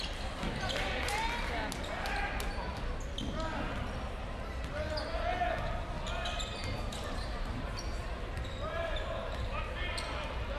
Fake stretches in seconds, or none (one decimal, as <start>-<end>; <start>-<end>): 6.5-7.7